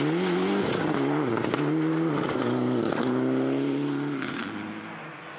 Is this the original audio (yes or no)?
yes